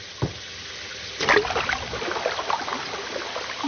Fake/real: real